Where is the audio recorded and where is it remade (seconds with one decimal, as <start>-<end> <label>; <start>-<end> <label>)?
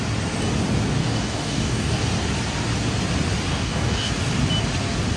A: 0.0-1.0 recorded; 1.0-2.0 remade; 2.0-3.5 recorded; 3.5-4.1 remade; 4.1-5.2 recorded